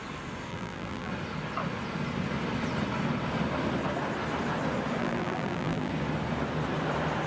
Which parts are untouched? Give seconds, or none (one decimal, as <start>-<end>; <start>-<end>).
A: 0.0-0.5; 1.1-5.0; 5.9-7.3